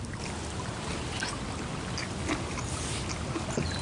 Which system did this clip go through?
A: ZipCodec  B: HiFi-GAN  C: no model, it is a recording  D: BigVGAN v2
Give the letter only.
C